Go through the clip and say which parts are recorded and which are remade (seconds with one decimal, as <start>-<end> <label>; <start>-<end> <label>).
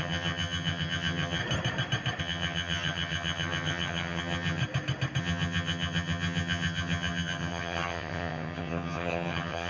0.0-1.4 remade; 1.4-2.2 recorded; 2.2-4.6 remade; 4.6-5.2 recorded; 5.2-9.7 remade